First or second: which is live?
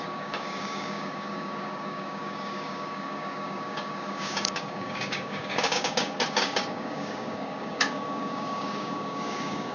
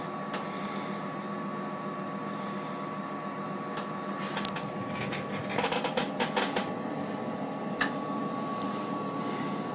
second